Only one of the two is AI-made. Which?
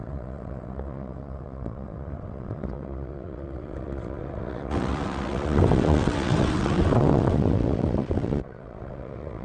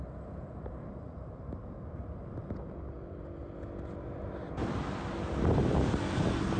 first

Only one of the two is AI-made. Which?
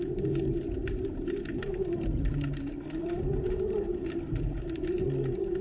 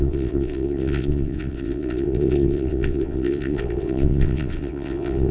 second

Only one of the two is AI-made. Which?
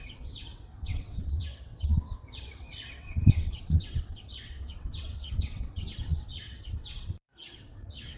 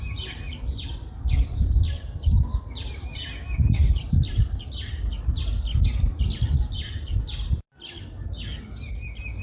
first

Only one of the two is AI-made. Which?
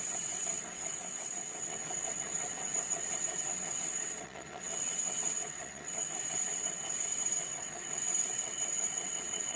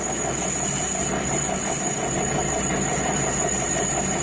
first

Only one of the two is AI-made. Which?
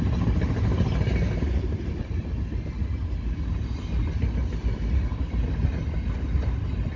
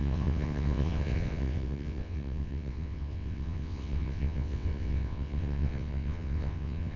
second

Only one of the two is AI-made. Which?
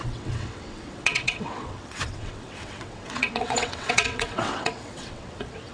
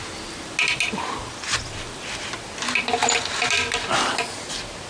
first